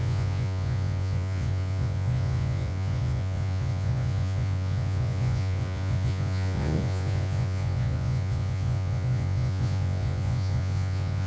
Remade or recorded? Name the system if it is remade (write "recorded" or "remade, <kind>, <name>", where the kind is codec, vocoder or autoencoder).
remade, vocoder, Vocos